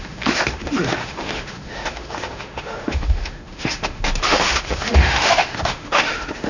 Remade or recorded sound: remade